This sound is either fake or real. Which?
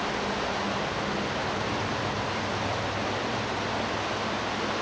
real